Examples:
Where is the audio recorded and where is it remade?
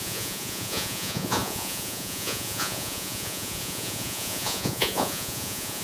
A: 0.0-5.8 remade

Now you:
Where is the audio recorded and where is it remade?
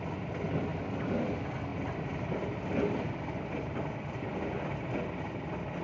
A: 0.0-5.8 recorded